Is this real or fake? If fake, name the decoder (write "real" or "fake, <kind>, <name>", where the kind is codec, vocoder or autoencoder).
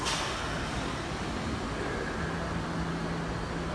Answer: real